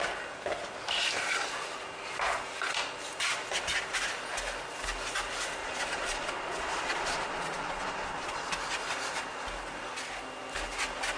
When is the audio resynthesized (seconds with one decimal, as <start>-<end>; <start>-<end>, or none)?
5.6-8.5